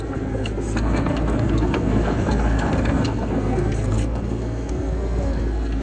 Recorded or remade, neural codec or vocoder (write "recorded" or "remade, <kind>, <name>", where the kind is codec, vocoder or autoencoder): remade, codec, SNAC